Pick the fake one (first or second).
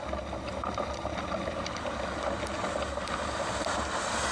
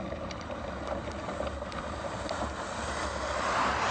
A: second